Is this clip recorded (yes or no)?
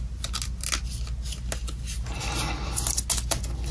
yes